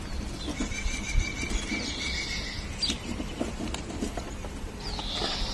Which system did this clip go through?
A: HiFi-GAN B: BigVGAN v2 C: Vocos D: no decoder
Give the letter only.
D